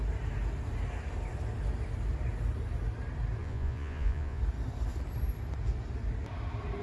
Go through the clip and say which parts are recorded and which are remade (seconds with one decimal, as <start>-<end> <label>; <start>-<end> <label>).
0.0-3.4 recorded; 3.4-4.4 remade; 4.4-6.8 recorded